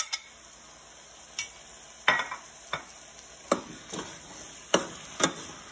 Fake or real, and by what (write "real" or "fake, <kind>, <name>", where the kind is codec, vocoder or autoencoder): real